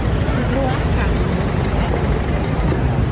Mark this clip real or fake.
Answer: real